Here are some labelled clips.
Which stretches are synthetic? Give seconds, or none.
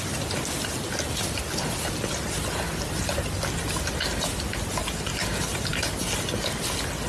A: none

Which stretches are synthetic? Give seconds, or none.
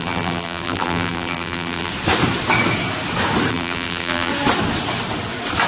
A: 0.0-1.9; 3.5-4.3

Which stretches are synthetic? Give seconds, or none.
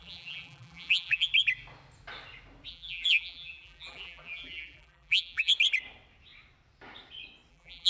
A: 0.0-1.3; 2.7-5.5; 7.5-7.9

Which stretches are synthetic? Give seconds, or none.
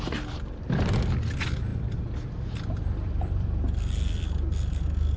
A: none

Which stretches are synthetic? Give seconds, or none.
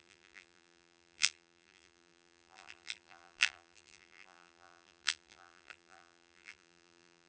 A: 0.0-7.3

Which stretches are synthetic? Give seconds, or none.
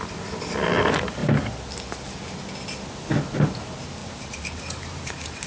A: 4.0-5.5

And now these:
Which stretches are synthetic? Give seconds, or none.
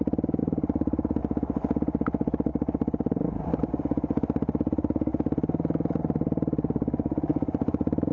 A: 0.4-1.2; 2.5-3.5